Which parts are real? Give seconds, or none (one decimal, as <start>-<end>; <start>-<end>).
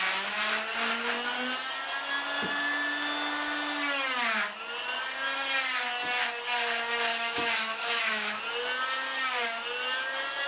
0.0-7.1; 8.4-10.5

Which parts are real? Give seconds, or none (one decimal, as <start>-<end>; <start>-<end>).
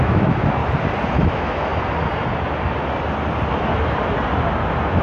0.6-1.1; 1.7-5.0